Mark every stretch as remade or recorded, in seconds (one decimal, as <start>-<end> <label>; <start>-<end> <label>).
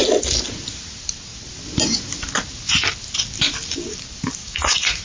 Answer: 0.0-4.4 recorded; 4.4-5.0 remade